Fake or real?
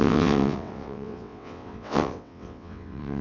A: fake